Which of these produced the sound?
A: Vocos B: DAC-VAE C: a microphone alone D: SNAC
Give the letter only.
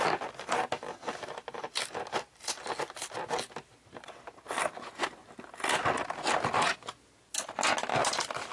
C